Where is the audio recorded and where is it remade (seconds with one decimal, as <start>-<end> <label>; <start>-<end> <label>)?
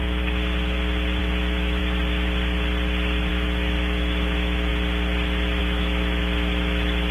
0.0-1.2 recorded; 1.2-1.8 remade; 1.8-3.3 recorded; 3.3-4.7 remade; 4.7-5.6 recorded; 5.6-7.1 remade